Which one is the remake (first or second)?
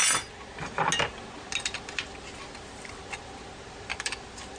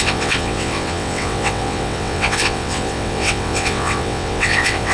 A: second